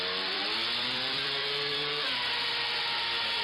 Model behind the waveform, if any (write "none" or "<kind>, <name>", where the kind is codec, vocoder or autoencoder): vocoder, BigVGAN v2